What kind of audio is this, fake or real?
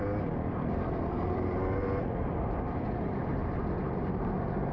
fake